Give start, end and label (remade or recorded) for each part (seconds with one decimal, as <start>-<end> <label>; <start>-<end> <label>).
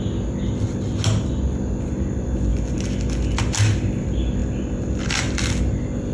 0.0-6.1 recorded